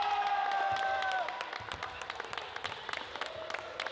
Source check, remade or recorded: recorded